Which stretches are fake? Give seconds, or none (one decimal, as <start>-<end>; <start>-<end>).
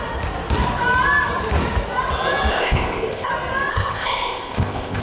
2.5-3.3; 3.7-5.0